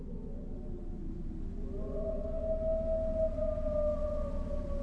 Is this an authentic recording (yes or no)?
yes